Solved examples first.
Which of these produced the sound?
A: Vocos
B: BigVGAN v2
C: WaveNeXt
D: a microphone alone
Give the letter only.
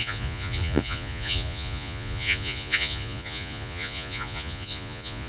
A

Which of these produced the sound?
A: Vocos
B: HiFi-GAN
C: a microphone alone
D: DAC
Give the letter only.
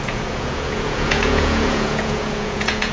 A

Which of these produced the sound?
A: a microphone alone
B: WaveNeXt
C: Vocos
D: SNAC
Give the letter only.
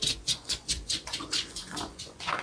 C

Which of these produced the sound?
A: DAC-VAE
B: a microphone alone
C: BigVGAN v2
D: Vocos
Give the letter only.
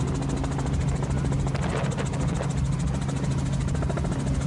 B